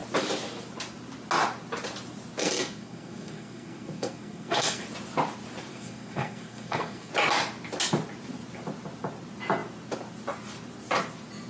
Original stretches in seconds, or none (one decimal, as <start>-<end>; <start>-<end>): 0.0-2.4; 4.8-5.7; 7.1-11.5